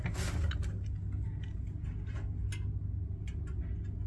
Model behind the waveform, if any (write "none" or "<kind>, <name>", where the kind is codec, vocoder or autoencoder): none